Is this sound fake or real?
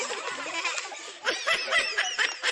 fake